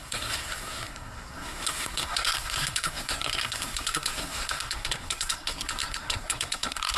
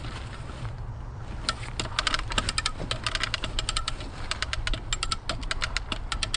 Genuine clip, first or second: second